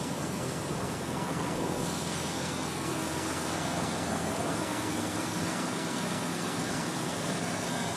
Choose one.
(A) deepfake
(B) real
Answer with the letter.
A